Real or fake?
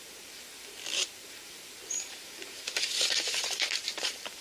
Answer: fake